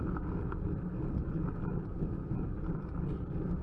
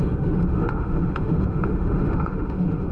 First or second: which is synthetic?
second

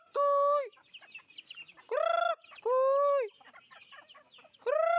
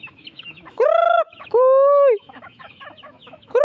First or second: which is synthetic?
second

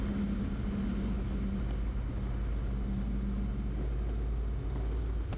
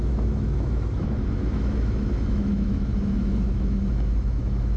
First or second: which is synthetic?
second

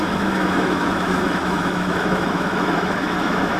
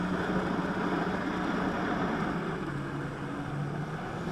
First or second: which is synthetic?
first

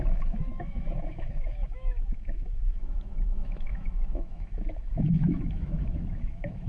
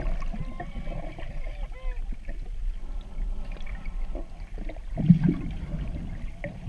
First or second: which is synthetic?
first